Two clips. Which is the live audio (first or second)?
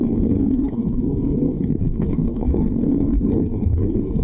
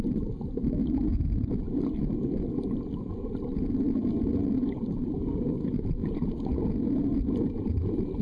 second